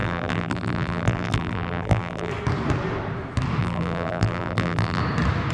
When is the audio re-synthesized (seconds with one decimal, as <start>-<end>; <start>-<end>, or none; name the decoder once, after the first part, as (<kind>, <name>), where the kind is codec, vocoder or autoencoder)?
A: 0.0-2.3 (vocoder, BigVGAN v2); 3.6-5.0